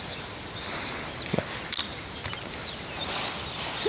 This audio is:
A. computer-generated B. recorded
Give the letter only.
B